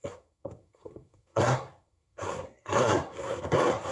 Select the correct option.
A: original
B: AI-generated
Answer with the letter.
B